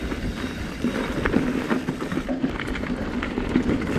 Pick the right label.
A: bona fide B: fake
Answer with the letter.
B